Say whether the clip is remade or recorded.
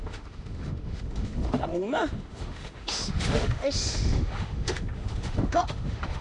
remade